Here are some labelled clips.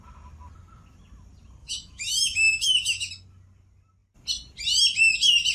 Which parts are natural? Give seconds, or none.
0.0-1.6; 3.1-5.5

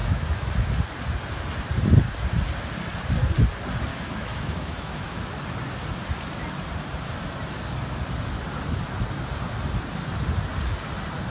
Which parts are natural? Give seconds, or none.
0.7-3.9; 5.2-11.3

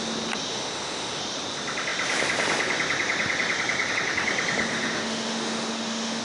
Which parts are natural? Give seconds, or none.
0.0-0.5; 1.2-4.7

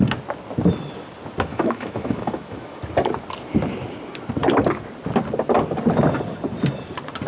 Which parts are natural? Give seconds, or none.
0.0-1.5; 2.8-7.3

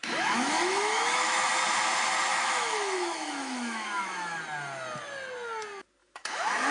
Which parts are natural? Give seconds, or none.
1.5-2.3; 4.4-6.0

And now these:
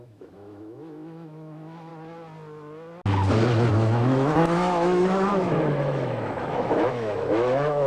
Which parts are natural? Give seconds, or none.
1.9-3.7